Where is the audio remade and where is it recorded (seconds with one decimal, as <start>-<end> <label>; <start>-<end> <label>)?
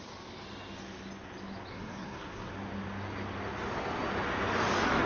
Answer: 0.0-1.7 recorded; 1.7-2.5 remade; 2.5-5.1 recorded